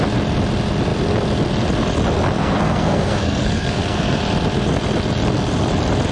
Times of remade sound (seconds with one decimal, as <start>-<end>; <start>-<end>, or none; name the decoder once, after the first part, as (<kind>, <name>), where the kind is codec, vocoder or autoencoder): 2.4-4.2 (codec, SNAC)